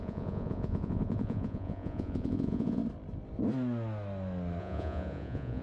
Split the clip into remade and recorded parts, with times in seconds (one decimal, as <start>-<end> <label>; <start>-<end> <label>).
0.0-2.8 remade; 2.8-4.6 recorded; 4.6-5.6 remade